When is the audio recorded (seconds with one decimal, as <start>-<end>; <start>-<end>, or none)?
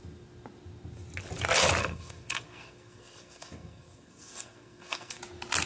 0.0-1.8; 5.2-5.7